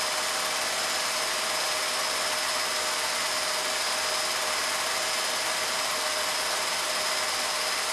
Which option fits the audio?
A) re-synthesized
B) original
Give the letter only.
B